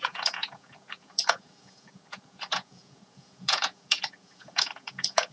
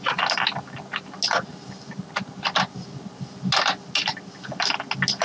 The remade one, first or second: first